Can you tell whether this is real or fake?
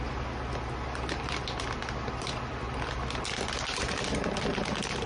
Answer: real